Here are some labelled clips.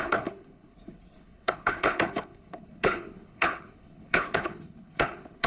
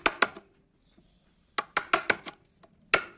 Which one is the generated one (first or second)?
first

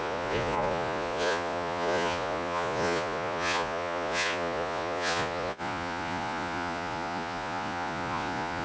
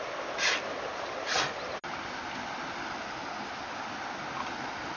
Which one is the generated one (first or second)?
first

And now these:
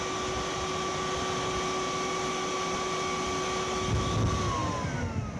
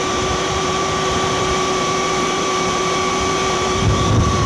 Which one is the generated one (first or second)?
second